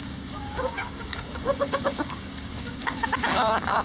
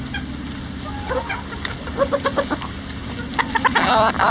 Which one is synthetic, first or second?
first